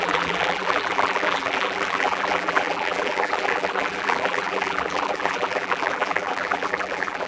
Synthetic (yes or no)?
yes